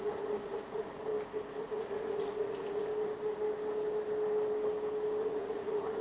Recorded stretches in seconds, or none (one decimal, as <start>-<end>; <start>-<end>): 1.1-1.6; 2.9-5.2